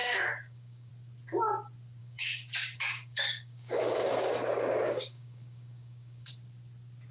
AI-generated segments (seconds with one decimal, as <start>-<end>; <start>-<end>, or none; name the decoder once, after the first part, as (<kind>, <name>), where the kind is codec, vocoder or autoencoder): 0.0-0.9 (codec, DAC); 2.0-6.3